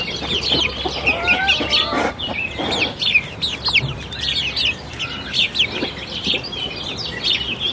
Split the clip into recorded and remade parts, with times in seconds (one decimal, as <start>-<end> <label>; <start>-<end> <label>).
0.0-7.7 recorded